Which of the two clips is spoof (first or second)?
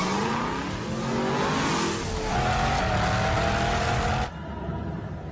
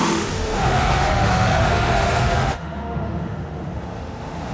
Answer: second